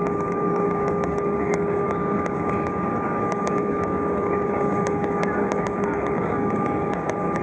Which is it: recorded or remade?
remade